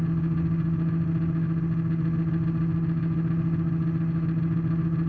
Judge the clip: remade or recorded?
recorded